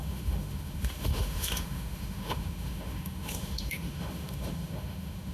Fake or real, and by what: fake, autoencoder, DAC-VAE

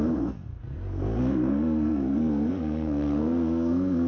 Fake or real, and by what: fake, codec, SNAC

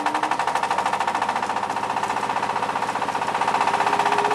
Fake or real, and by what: fake, vocoder, BigVGAN v2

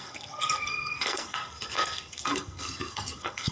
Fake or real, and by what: fake, codec, SNAC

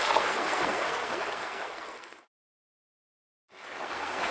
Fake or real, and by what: fake, codec, SNAC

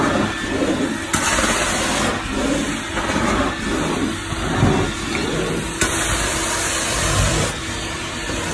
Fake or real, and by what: real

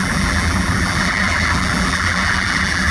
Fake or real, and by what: fake, vocoder, BigVGAN v2